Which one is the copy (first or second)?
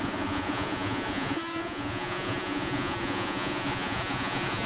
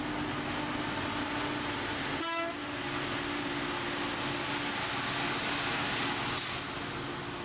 first